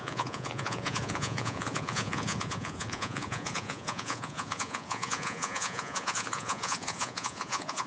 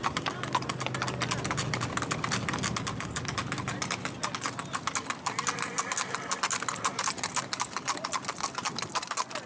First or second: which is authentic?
second